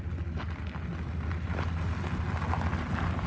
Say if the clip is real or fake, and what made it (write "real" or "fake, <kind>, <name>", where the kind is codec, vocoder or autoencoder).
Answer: real